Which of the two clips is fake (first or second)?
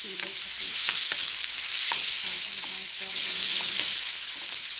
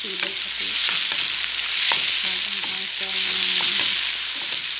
first